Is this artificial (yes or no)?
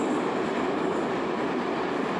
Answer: no